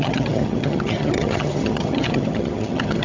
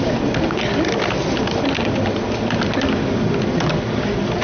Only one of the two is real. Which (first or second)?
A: second